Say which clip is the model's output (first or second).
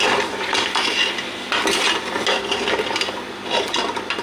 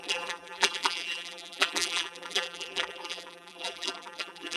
second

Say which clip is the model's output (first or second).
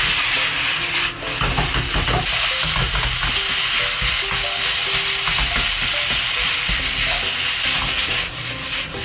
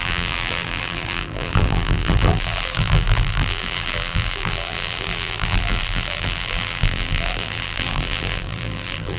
second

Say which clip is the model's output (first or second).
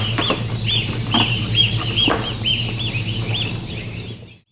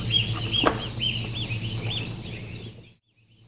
first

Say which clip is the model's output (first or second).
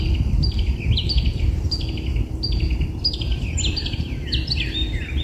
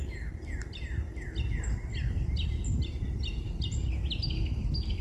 first